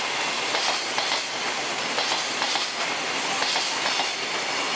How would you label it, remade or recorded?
recorded